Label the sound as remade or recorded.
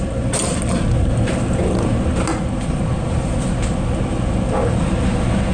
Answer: recorded